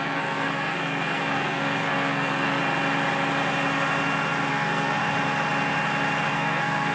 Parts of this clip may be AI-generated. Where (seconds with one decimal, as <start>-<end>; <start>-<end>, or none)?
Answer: 0.0-2.6; 4.5-5.0; 6.3-6.9